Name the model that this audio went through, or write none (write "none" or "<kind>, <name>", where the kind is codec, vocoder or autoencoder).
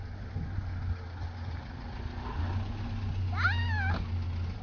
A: none